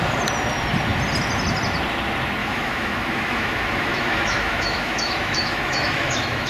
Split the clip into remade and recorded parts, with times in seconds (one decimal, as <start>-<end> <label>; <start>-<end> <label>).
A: 0.0-2.4 recorded; 2.4-6.5 remade